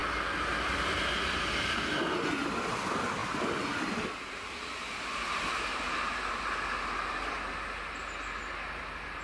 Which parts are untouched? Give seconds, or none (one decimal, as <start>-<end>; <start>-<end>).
1.8-3.2; 6.2-9.2